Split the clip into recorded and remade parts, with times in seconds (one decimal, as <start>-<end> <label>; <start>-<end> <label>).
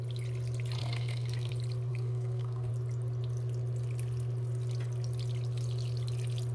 0.0-0.8 recorded; 0.8-1.5 remade; 1.5-1.9 recorded; 1.9-2.7 remade; 2.7-6.5 recorded